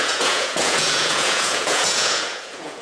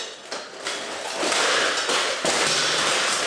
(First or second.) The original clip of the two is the second